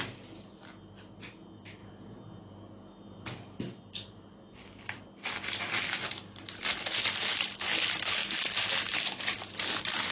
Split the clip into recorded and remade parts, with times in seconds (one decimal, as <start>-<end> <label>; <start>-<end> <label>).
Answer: 0.0-10.1 recorded